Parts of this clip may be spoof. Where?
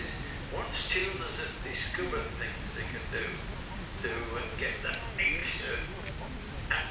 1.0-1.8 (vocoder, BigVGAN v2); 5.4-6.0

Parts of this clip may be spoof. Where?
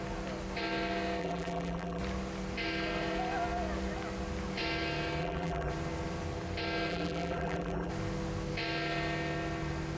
1.2-2.0 (vocoder, BigVGAN v2); 5.2-5.7; 6.9-7.9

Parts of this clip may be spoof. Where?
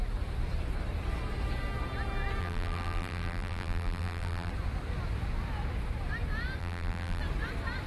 2.4-4.5 (vocoder, BigVGAN v2); 6.6-7.2